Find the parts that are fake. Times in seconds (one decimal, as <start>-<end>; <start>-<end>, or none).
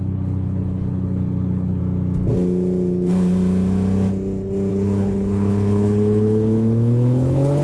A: 0.0-1.8; 4.7-7.6